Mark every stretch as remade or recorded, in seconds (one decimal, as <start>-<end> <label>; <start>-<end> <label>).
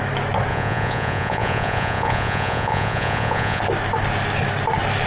0.0-0.5 recorded; 0.5-3.6 remade; 3.6-5.1 recorded